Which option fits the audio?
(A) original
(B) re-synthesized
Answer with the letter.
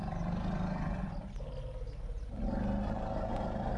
A